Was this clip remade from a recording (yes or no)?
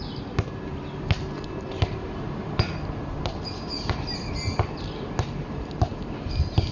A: no